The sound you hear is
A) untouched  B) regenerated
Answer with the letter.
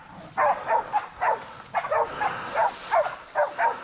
A